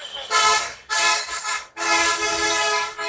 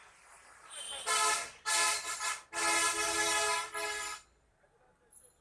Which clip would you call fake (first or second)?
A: first